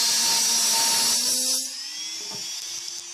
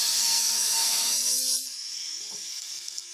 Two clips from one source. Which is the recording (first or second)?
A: first